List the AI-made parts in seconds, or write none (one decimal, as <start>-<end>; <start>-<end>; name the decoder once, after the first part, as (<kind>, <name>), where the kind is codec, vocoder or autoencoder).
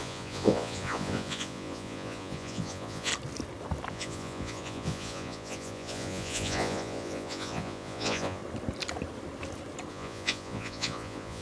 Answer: 0.0-3.1 (vocoder, Vocos); 3.9-8.4; 9.9-11.4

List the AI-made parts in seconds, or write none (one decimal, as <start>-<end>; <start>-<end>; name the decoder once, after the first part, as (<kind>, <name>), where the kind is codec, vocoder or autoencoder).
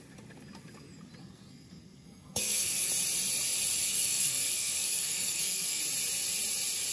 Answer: 1.2-2.9 (codec, SNAC); 3.9-5.8